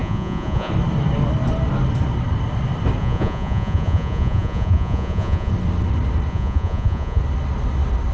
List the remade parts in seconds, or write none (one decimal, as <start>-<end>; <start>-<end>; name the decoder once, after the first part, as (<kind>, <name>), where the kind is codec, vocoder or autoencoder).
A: 0.0-0.7 (vocoder, Vocos); 3.0-5.5; 6.3-7.2